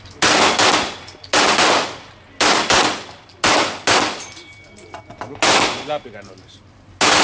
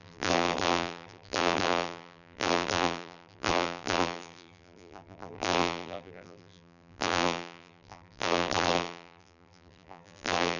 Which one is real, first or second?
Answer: first